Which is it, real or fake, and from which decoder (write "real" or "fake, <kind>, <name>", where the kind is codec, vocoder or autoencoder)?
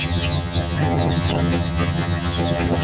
fake, vocoder, HiFi-GAN